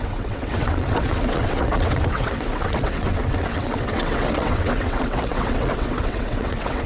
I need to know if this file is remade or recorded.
remade